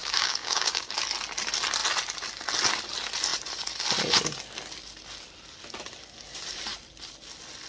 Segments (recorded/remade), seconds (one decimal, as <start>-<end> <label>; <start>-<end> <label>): 0.0-1.0 remade; 1.0-7.7 recorded